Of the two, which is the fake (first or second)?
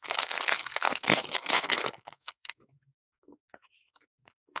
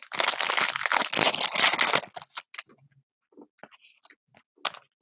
first